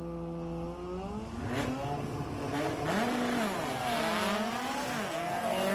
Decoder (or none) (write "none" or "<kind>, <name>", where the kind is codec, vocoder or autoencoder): none